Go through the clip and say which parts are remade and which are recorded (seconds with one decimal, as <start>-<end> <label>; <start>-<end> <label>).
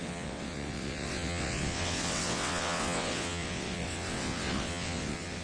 0.0-5.4 remade